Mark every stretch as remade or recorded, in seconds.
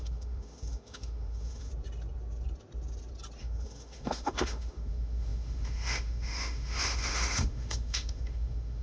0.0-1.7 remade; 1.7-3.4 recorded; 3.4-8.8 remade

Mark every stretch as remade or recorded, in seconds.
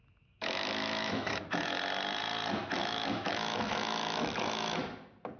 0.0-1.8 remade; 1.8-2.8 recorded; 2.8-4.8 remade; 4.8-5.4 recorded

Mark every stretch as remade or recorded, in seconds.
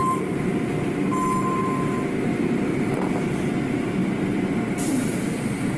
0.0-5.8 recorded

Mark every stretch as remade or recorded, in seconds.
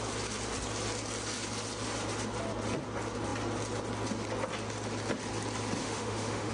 0.0-5.8 recorded; 5.8-6.5 remade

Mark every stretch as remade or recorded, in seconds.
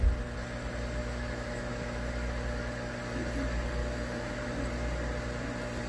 0.0-1.0 recorded; 1.0-2.1 remade; 2.1-3.8 recorded; 3.8-4.6 remade; 4.6-5.9 recorded